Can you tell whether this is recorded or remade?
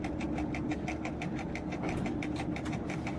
recorded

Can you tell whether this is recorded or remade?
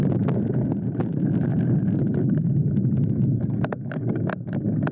remade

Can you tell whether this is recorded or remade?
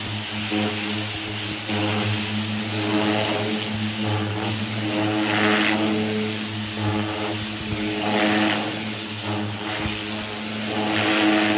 recorded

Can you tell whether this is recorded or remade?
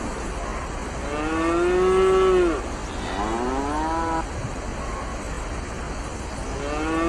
recorded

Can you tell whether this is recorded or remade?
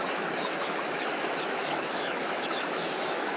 remade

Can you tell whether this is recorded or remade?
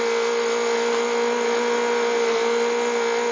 recorded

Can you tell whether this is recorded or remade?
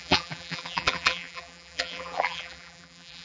remade